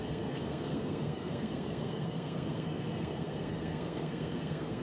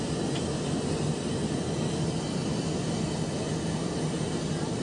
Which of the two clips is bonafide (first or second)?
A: second